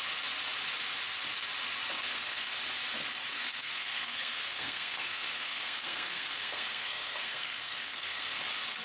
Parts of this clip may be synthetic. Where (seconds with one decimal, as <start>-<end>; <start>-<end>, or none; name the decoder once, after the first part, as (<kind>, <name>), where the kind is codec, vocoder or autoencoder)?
2.0-2.6 (codec, SNAC); 3.3-8.4